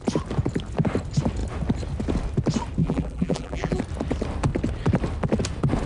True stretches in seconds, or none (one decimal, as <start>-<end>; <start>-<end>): 0.0-2.8; 3.8-5.9